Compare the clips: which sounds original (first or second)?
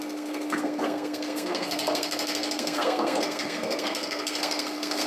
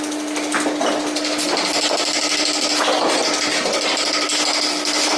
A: second